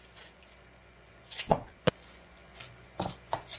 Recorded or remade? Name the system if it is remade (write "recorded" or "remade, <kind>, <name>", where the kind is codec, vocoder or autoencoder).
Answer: remade, vocoder, Vocos